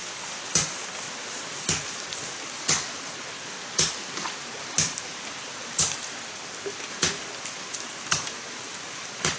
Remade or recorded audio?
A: recorded